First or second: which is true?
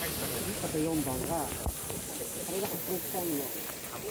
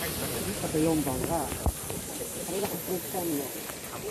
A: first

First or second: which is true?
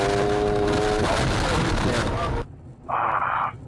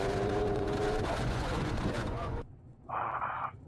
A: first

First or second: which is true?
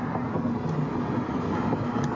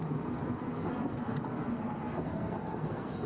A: first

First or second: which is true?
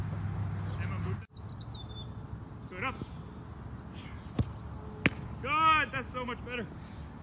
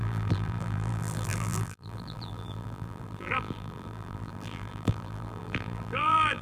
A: first